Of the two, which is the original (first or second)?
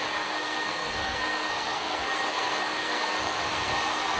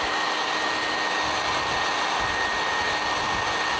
second